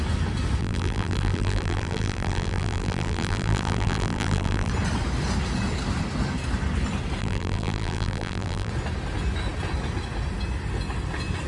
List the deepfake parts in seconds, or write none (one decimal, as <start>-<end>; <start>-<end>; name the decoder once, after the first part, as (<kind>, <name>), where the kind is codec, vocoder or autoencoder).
0.6-4.7 (vocoder, BigVGAN v2); 7.2-8.7